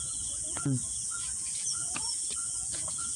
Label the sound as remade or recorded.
remade